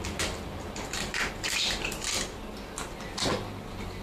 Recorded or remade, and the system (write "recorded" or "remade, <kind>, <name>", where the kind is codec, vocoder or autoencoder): remade, vocoder, BigVGAN v2